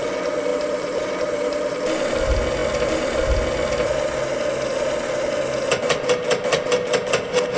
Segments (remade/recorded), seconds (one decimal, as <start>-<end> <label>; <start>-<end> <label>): 0.0-0.5 recorded; 0.5-1.7 remade; 1.7-7.6 recorded